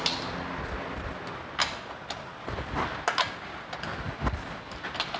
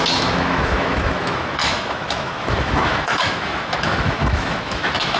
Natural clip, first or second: first